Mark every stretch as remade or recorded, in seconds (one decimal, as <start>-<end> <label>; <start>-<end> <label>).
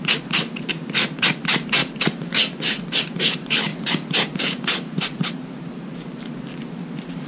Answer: 0.0-1.8 remade; 1.8-3.0 recorded; 3.0-7.3 remade